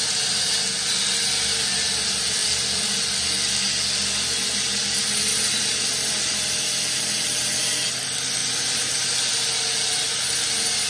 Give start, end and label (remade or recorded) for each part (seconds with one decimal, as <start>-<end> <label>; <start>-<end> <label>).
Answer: 0.0-10.9 recorded